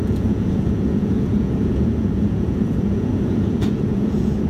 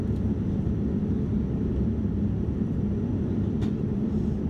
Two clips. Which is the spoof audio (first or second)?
first